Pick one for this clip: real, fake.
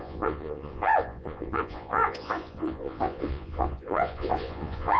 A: fake